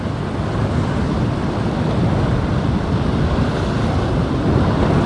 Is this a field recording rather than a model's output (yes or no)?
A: yes